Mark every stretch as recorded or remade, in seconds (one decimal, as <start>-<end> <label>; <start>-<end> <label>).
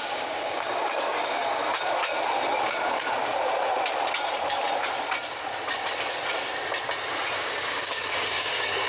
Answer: 0.0-1.6 remade; 1.6-2.6 recorded; 2.6-3.3 remade; 3.3-7.4 recorded; 7.4-8.9 remade